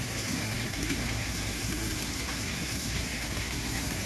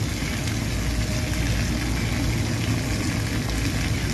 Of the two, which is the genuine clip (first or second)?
second